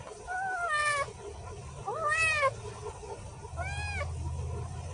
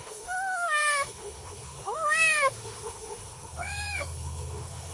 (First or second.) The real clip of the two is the first